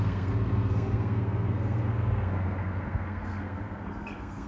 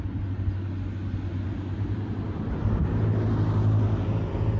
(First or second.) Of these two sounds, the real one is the second